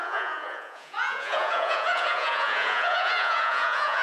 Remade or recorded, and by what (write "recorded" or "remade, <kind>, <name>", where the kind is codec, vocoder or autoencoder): remade, vocoder, Vocos